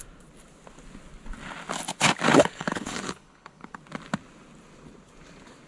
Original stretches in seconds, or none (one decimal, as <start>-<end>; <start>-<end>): 0.0-2.3; 3.8-5.7